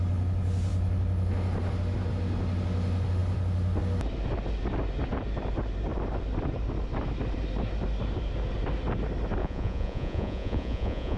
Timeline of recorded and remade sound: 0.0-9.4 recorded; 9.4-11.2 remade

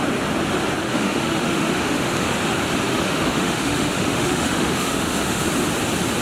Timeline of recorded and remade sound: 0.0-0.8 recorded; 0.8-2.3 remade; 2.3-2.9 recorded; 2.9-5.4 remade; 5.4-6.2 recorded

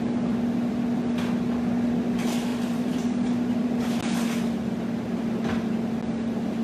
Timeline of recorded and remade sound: 0.0-2.5 recorded; 2.5-4.0 remade; 4.0-6.6 recorded

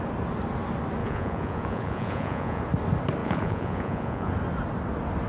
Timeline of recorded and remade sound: 0.0-1.0 recorded; 1.0-2.6 remade; 2.6-3.2 recorded; 3.2-4.3 remade; 4.3-5.3 recorded